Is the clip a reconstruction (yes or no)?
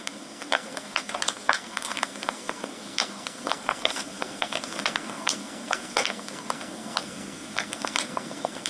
yes